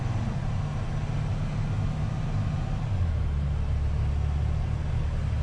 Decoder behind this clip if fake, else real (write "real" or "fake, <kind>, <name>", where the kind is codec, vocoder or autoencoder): real